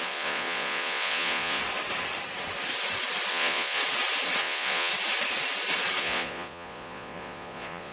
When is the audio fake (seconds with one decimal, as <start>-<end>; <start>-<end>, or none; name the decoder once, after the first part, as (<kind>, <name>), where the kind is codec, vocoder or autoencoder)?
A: 0.0-1.6 (vocoder, Vocos); 3.3-3.8; 4.4-4.9; 6.0-7.9